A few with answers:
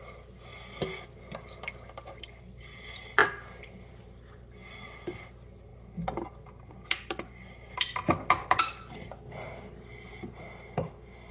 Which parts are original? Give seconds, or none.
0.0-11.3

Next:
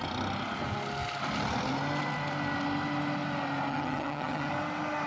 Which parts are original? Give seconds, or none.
0.0-3.7; 4.5-5.1

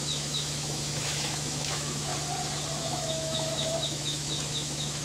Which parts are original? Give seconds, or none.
2.1-2.8

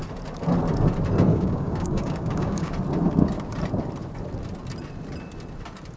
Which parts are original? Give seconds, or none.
0.0-1.3; 2.7-6.0

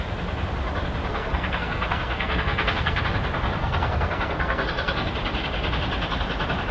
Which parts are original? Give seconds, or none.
0.0-1.1; 3.0-3.6; 5.1-6.7

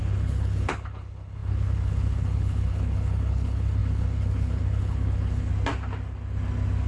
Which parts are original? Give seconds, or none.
5.5-6.9

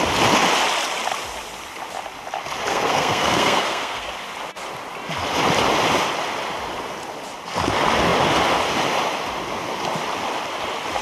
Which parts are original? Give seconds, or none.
0.0-2.7; 4.1-11.0

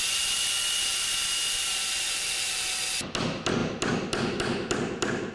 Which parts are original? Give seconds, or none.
0.0-5.3